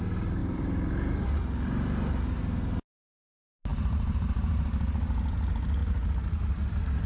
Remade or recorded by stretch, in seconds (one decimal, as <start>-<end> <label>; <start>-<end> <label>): 0.0-0.4 recorded; 0.4-2.4 remade; 2.4-3.7 recorded; 3.7-4.6 remade; 4.6-7.1 recorded